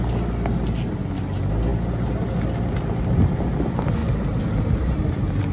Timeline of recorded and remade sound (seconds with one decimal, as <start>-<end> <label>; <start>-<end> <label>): 0.0-5.5 recorded